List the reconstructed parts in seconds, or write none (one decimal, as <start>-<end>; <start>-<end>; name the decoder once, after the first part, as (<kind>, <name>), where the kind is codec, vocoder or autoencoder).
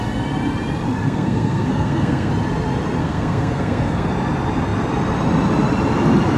0.9-2.3 (codec, SNAC); 3.0-4.1